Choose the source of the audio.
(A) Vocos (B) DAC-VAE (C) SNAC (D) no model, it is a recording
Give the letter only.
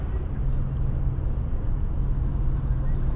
D